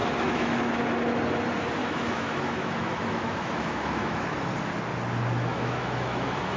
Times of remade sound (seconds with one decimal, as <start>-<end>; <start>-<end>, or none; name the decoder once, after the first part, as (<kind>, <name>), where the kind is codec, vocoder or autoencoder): 0.0-0.7 (autoencoder, DAC-VAE); 1.8-4.5; 5.5-6.6

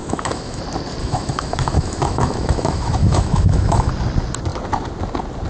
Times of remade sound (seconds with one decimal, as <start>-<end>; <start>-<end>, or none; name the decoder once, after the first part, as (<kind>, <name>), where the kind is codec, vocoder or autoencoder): 0.0-0.6 (autoencoder, DAC-VAE); 1.0-3.9

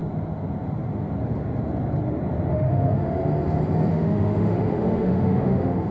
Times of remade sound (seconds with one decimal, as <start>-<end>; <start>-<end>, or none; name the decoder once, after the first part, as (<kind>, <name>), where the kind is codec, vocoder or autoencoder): 2.5-3.2 (autoencoder, DAC-VAE); 3.9-5.9

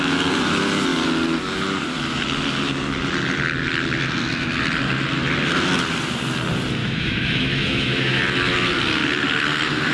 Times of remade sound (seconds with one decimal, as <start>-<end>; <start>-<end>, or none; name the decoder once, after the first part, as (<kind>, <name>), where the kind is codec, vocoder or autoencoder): 6.8-8.2 (autoencoder, DAC-VAE)

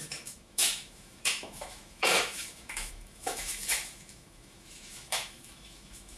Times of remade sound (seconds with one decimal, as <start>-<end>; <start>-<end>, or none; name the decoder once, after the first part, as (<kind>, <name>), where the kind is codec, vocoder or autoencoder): 0.0-6.2 (autoencoder, DAC-VAE)

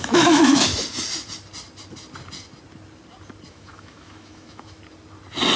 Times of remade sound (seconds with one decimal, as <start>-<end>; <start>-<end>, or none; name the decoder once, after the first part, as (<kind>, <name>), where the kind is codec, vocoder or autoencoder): 0.0-0.7 (autoencoder, DAC-VAE); 3.5-4.8

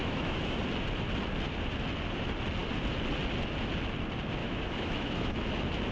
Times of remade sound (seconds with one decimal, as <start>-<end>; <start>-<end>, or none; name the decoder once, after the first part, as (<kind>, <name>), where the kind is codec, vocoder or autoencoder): 0.0-0.6 (autoencoder, DAC-VAE); 4.4-5.3